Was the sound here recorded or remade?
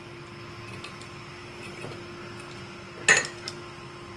recorded